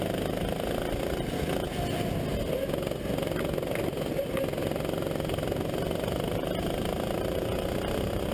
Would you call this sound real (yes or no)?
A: yes